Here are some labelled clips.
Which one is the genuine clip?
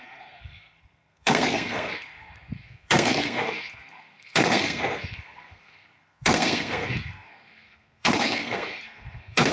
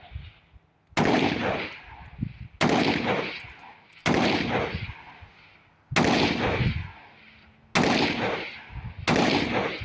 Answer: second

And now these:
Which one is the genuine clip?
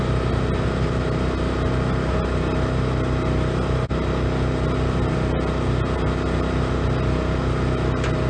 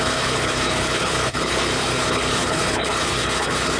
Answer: first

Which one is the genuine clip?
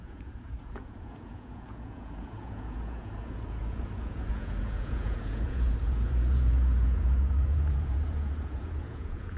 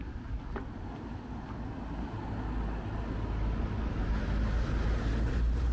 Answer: second